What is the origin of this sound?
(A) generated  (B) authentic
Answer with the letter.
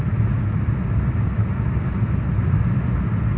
B